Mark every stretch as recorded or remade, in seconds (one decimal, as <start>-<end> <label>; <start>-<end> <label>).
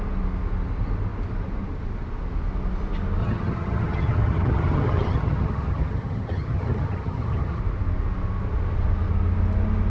0.0-3.2 recorded; 3.2-7.6 remade; 7.6-9.9 recorded